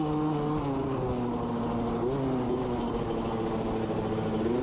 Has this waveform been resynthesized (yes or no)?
no